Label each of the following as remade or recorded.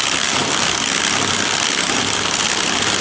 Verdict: recorded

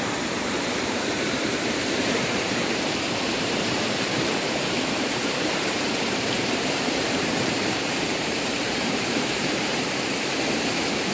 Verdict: remade